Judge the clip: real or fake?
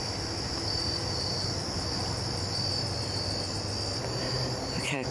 real